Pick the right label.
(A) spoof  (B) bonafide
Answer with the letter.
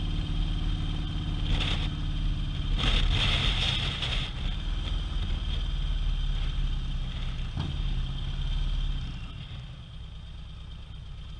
B